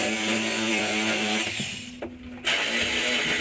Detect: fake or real real